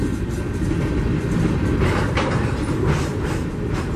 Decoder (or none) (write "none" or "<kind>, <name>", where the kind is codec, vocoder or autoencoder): none